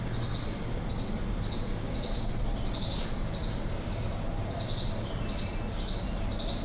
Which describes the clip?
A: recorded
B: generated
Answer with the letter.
A